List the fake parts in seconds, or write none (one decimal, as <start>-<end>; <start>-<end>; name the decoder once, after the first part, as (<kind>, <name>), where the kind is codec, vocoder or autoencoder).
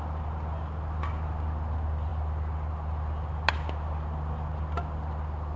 none